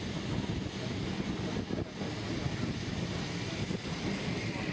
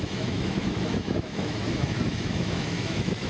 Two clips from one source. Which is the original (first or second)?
first